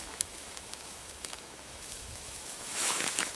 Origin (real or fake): fake